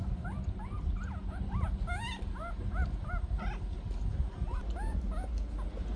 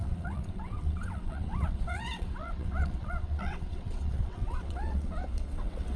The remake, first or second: second